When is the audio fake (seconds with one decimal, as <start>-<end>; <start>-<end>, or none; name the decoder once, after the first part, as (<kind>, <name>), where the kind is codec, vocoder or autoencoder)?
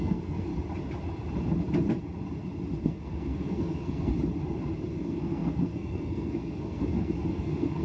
0.0-0.5 (codec, SNAC); 2.8-4.1; 4.9-7.8